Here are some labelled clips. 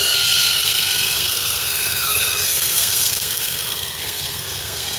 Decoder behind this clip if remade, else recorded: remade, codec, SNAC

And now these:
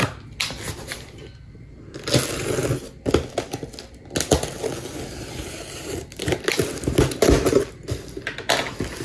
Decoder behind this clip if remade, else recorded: recorded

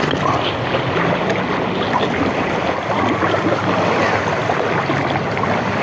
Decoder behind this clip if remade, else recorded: recorded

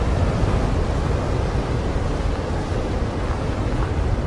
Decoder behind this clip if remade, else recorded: recorded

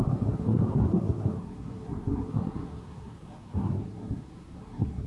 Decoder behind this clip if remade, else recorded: remade, codec, SNAC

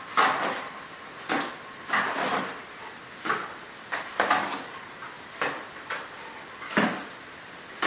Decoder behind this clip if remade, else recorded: remade, vocoder, BigVGAN v2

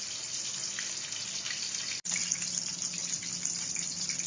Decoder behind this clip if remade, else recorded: recorded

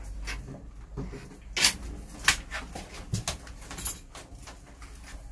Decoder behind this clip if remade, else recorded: recorded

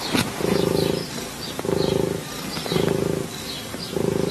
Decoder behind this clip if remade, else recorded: remade, vocoder, BigVGAN v2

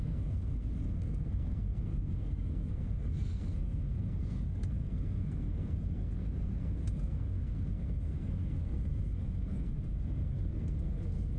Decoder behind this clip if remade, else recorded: remade, codec, SNAC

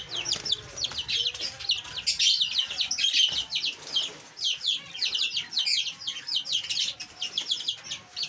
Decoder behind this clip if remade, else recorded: recorded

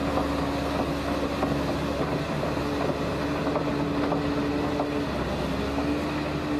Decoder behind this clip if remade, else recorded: recorded